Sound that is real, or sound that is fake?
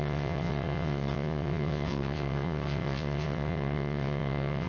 fake